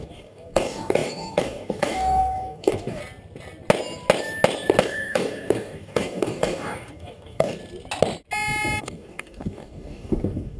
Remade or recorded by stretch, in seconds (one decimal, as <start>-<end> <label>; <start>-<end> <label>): 0.0-3.0 remade; 3.0-4.8 recorded; 4.8-7.6 remade; 7.6-8.8 recorded; 8.8-10.6 remade